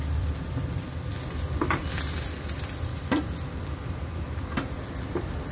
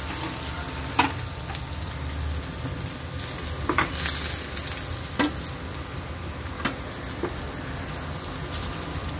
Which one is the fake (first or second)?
first